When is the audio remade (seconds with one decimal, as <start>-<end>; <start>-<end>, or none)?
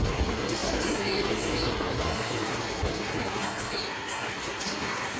0.0-5.2